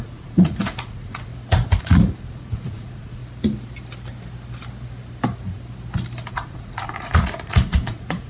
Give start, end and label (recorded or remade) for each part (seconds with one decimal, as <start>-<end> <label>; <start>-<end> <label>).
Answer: 0.0-1.3 remade; 1.3-1.8 recorded; 1.8-3.2 remade; 3.2-6.3 recorded; 6.3-8.3 remade